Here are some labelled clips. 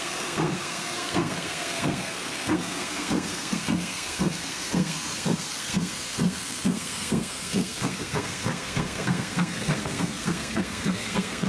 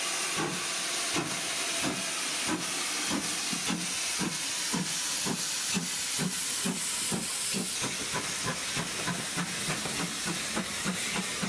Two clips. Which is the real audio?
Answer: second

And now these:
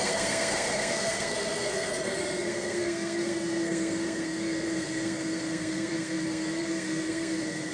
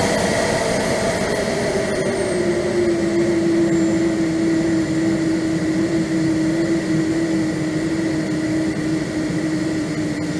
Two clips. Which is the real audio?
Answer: second